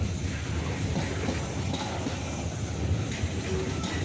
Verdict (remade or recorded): recorded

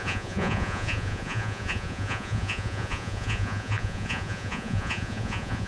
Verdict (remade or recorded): remade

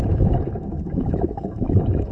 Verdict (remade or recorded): remade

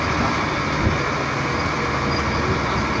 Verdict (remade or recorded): recorded